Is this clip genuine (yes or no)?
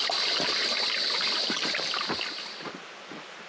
yes